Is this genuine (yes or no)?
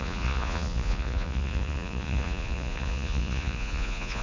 no